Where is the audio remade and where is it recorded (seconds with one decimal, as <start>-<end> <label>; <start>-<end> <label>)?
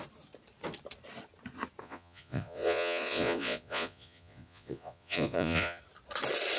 0.0-1.8 recorded; 1.8-5.8 remade; 5.8-6.6 recorded